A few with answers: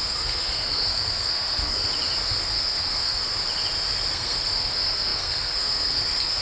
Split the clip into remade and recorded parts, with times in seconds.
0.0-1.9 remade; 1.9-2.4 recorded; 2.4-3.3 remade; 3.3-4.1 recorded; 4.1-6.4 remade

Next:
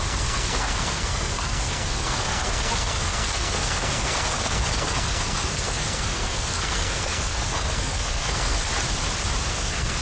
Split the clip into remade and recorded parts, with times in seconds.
0.0-8.7 remade; 8.7-9.5 recorded; 9.5-10.0 remade

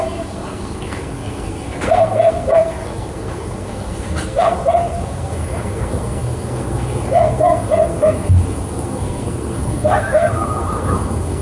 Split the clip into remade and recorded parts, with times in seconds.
0.0-11.4 remade

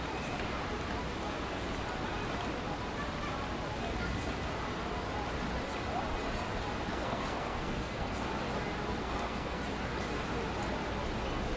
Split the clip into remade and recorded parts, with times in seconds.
0.0-6.9 recorded; 6.9-8.3 remade; 8.3-9.0 recorded; 9.0-9.6 remade; 9.6-11.6 recorded